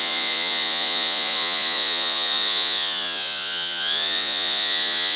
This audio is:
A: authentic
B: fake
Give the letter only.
B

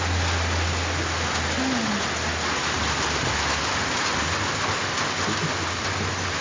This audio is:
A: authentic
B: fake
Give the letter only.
A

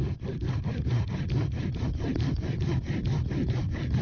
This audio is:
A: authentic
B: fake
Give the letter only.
A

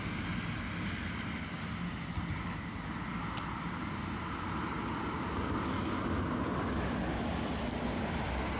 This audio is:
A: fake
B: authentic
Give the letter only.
B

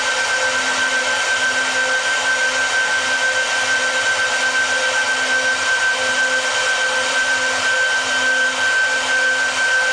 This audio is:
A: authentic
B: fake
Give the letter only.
A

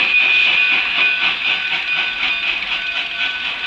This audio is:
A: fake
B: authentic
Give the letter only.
B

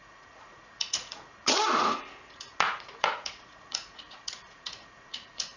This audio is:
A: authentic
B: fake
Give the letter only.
B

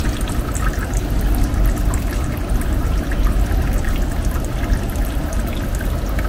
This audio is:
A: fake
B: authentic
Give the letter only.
B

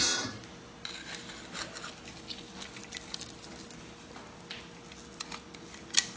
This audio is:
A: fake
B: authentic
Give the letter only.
B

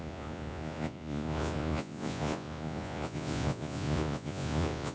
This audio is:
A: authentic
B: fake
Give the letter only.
B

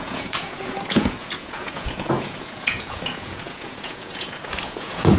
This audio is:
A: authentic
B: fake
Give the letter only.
B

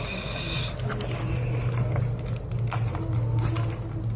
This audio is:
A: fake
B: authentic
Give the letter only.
B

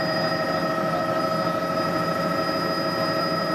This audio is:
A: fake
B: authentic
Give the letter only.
B